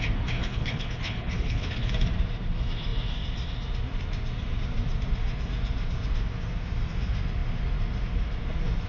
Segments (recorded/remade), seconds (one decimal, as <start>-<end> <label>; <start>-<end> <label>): 0.0-0.4 recorded; 0.4-1.9 remade; 1.9-8.9 recorded